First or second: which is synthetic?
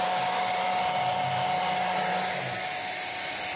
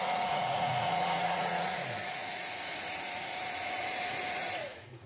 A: second